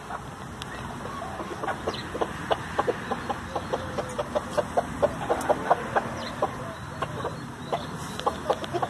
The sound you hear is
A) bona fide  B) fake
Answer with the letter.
A